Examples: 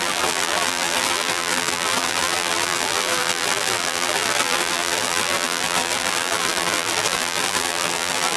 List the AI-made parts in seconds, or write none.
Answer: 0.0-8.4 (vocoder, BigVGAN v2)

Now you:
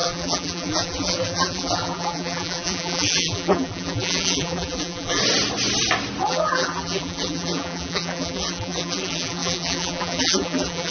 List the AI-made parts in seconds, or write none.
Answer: 0.0-5.2 (vocoder, BigVGAN v2); 6.2-10.9

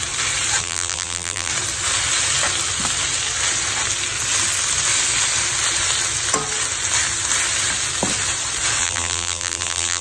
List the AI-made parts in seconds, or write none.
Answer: 0.6-1.5 (vocoder, BigVGAN v2); 8.8-10.0

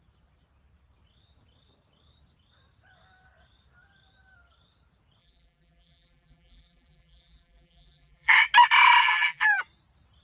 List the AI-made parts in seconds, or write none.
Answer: 5.2-8.3 (vocoder, BigVGAN v2); 9.0-9.6